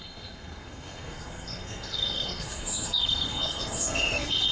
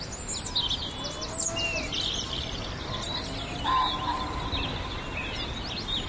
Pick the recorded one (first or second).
second